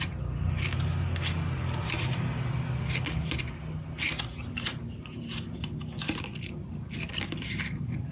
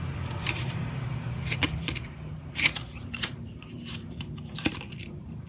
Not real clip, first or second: second